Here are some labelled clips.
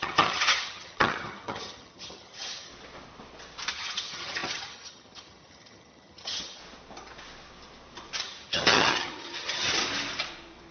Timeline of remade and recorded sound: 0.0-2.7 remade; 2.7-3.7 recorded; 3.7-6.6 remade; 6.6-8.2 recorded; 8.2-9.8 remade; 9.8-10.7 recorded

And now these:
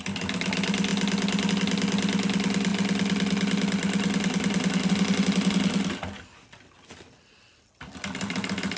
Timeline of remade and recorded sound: 0.0-8.8 recorded

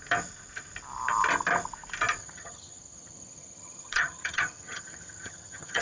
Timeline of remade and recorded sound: 0.0-2.2 recorded; 2.2-5.8 remade

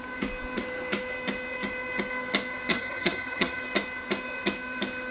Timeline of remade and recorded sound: 0.0-2.7 recorded; 2.7-3.6 remade; 3.6-5.1 recorded